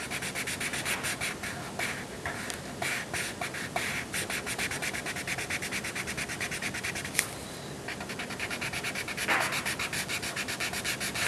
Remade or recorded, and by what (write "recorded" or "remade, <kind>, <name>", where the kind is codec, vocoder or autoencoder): recorded